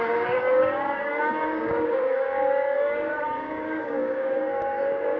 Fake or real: fake